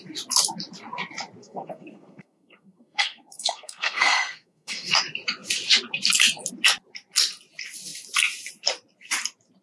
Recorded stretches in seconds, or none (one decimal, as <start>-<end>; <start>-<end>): 0.0-1.4; 4.9-9.6